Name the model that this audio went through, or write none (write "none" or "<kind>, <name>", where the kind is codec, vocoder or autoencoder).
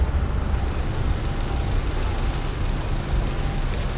none